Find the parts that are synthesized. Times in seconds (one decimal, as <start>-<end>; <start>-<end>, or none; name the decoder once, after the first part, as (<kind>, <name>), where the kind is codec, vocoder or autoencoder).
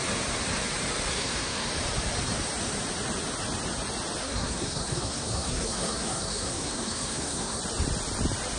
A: 1.1-1.7 (codec, SNAC); 4.2-7.6